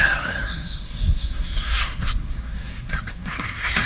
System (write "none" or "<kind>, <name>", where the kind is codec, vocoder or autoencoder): codec, SNAC